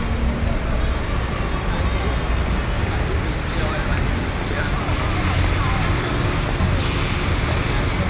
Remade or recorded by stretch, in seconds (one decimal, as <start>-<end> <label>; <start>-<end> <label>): 0.0-8.1 recorded